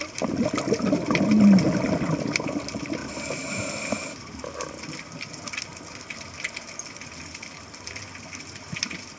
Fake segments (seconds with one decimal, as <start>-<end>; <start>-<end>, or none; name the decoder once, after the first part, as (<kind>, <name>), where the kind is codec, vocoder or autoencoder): none